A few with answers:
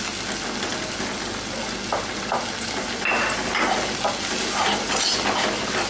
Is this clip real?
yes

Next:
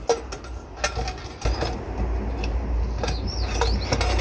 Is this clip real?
yes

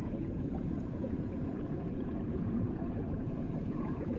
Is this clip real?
no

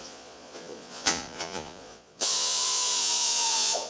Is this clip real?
no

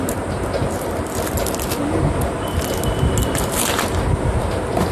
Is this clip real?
yes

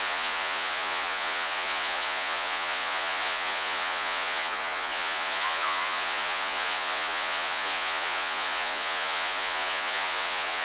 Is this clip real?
no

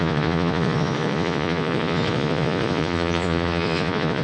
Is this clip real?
no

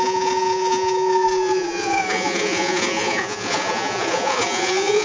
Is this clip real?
no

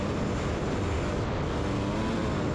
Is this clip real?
yes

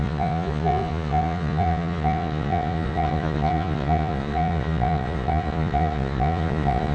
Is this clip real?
no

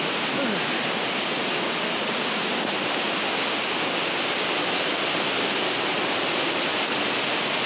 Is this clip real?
yes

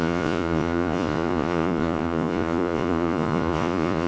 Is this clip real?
no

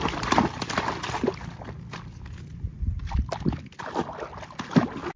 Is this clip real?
yes